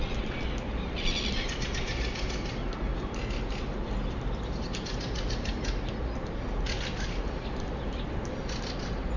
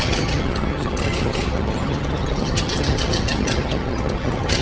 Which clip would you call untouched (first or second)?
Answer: first